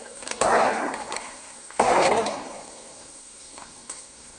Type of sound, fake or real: fake